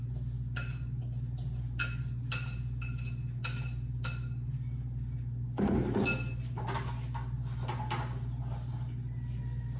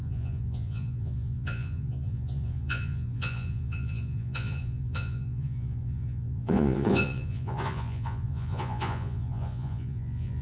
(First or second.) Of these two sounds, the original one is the first